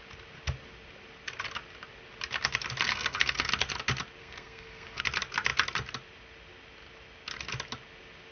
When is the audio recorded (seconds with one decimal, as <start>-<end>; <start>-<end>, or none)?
0.0-2.9; 3.5-4.2; 5.0-8.3

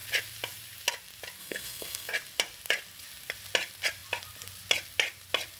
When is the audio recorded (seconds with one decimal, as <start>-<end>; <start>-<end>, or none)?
0.0-1.4; 2.1-5.6

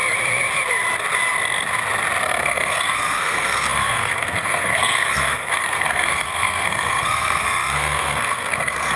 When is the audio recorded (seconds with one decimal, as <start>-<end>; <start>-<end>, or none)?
0.0-2.2

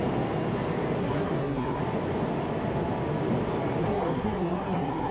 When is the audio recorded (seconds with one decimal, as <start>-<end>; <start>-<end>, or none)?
0.0-1.0; 1.8-3.8

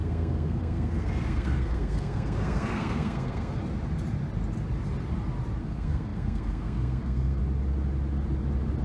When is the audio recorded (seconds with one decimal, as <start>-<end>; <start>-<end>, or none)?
3.6-5.6; 7.4-8.8